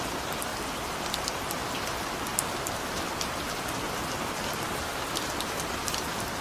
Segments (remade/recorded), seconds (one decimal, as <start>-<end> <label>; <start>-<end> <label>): 0.0-0.5 remade; 0.5-1.1 recorded; 1.1-1.6 remade; 1.6-4.3 recorded; 4.3-4.9 remade; 4.9-5.4 recorded; 5.4-6.4 remade

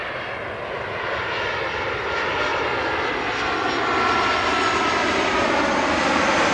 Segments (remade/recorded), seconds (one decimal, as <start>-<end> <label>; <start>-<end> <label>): 0.0-1.4 recorded; 1.4-2.5 remade; 2.5-4.7 recorded; 4.7-6.5 remade

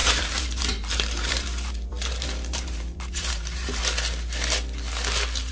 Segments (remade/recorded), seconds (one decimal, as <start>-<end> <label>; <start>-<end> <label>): 0.0-3.8 remade; 3.8-5.5 recorded

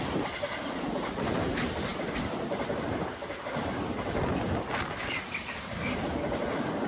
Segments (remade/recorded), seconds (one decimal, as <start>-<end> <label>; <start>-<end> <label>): 0.0-6.9 recorded